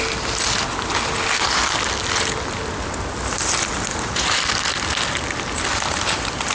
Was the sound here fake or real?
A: real